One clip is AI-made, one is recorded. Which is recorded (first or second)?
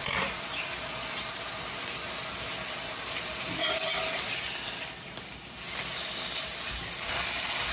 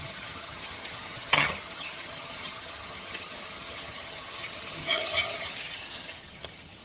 first